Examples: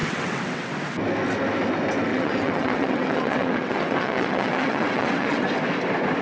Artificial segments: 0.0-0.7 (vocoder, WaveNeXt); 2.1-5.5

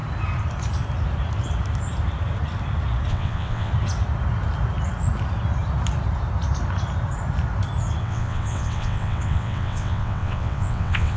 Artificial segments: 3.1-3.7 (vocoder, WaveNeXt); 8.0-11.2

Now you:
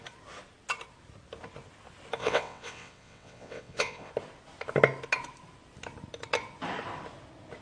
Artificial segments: 2.2-4.1 (vocoder, WaveNeXt)

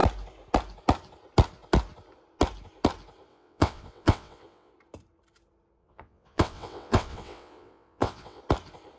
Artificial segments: 3.3-4.7 (vocoder, WaveNeXt); 5.8-8.4

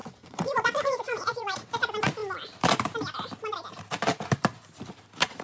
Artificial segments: 0.0-1.7 (vocoder, WaveNeXt)